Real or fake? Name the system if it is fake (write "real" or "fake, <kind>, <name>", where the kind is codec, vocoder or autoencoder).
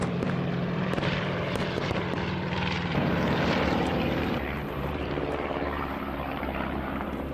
fake, vocoder, BigVGAN v2